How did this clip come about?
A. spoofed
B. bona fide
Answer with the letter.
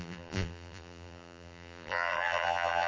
A